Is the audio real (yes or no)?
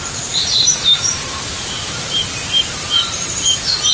no